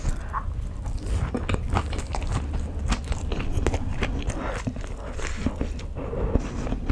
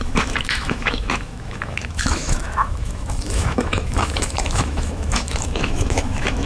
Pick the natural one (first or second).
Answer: first